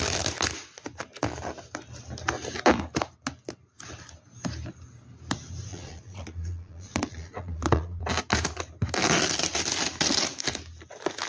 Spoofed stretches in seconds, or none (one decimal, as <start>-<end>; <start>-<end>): 5.7-8.0